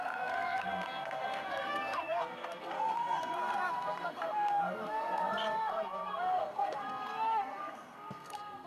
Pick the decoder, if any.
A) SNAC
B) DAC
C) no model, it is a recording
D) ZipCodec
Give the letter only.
A